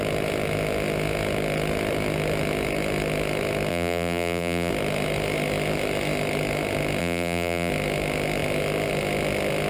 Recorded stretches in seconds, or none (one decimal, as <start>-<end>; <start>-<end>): 0.0-3.7; 4.7-7.0; 7.7-9.7